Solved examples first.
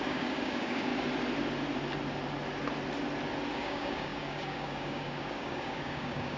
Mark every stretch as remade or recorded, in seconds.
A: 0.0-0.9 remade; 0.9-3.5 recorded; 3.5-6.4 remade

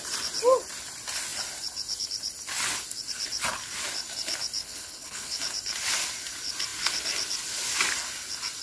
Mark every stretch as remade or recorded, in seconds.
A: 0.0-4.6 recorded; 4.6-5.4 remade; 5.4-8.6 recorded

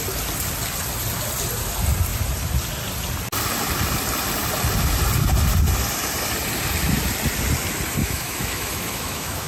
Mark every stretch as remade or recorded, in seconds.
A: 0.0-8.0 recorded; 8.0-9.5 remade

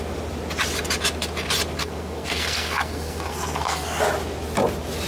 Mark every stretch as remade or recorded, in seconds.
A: 0.0-1.8 recorded; 1.8-4.0 remade; 4.0-5.1 recorded